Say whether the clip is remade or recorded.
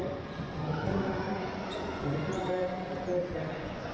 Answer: remade